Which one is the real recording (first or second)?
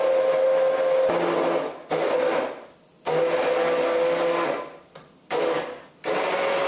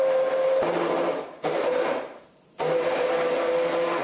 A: first